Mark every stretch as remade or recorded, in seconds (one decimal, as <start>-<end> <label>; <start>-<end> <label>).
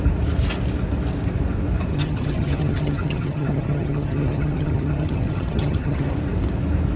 0.0-1.9 recorded; 1.9-6.1 remade; 6.1-7.0 recorded